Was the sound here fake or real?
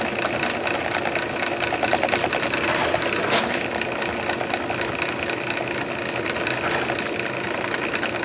real